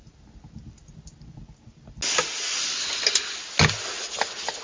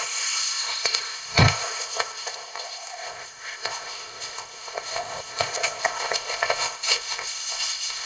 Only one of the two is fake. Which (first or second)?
second